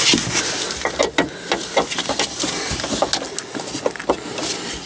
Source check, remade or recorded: recorded